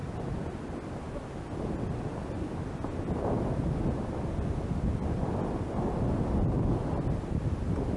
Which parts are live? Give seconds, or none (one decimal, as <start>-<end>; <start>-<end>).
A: 0.0-8.0